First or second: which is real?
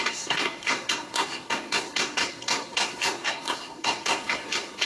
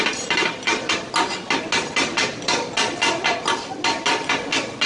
second